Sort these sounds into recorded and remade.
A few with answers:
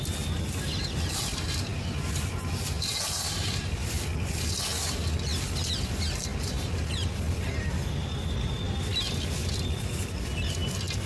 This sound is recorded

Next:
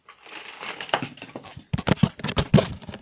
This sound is recorded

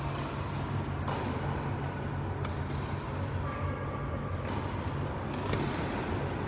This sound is recorded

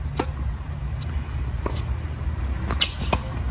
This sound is recorded